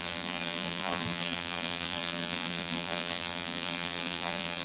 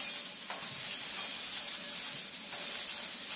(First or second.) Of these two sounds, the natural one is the second